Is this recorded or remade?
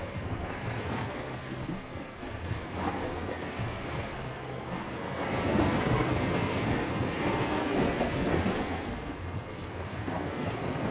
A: remade